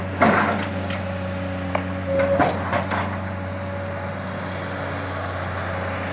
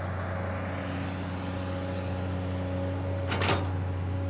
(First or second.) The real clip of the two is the second